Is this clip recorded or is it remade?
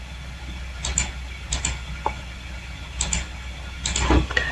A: recorded